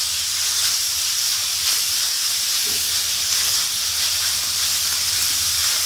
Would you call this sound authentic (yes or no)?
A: no